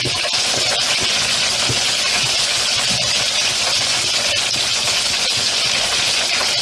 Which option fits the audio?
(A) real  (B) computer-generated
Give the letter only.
B